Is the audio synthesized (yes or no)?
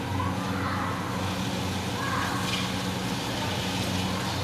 no